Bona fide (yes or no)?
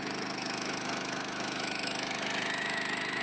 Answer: no